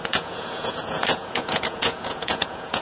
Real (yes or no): no